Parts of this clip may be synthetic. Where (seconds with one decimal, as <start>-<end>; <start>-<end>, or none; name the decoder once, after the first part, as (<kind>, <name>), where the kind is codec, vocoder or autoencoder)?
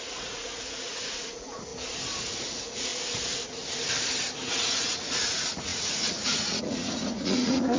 0.0-1.7 (vocoder, Vocos); 2.2-2.9; 4.4-7.8